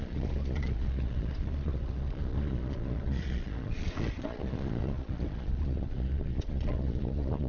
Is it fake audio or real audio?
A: fake